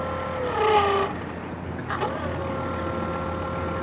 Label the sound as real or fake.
real